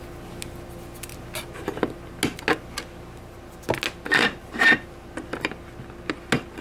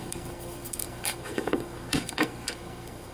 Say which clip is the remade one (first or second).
second